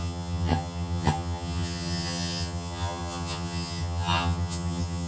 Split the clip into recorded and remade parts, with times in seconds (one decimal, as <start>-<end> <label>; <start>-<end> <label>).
0.0-5.1 remade

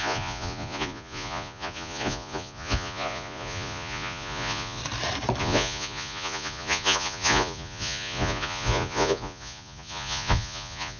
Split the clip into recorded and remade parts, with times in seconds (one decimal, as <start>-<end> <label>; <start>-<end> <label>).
0.0-4.8 remade; 4.8-5.4 recorded; 5.4-11.0 remade